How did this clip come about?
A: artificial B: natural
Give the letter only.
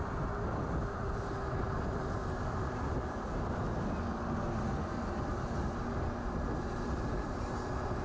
B